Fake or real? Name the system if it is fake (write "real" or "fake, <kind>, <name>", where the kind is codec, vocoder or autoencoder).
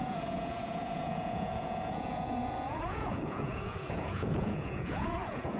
fake, vocoder, Vocos